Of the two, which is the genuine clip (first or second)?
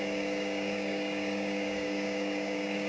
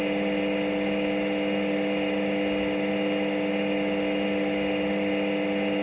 second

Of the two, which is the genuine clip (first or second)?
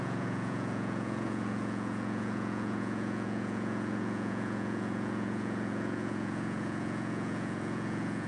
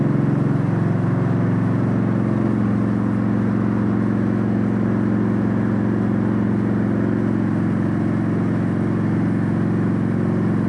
second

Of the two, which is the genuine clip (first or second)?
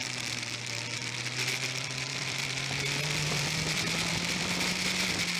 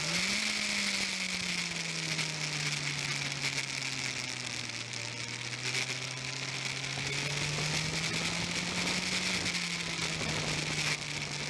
second